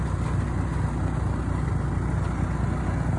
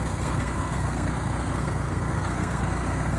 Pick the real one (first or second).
first